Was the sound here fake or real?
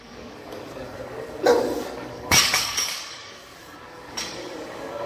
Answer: fake